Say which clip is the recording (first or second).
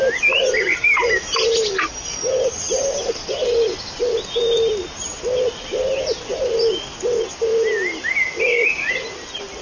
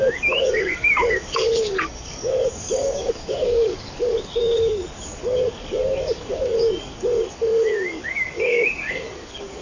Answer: first